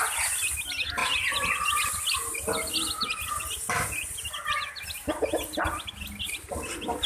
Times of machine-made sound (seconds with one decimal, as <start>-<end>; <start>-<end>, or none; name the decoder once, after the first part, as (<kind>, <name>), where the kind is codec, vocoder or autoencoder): none